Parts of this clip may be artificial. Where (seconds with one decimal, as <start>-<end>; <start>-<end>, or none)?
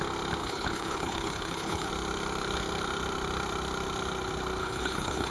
0.4-1.9; 4.6-5.3